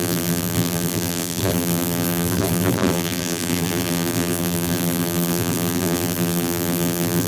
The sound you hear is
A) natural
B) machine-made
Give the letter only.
B